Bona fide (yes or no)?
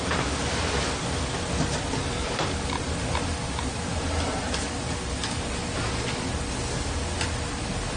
yes